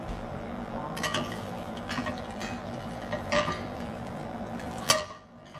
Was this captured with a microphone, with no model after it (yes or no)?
no